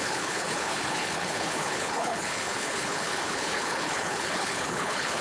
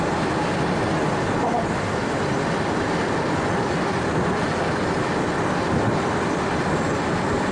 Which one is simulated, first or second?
first